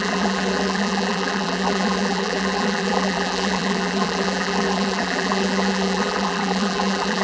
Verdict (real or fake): fake